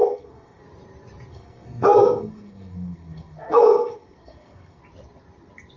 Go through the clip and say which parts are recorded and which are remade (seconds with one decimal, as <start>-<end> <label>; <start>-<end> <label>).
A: 0.0-0.6 remade; 0.6-1.3 recorded; 1.3-4.8 remade; 4.8-5.8 recorded